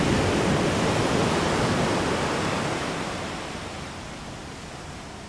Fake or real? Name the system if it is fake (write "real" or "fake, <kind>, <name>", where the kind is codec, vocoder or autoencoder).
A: real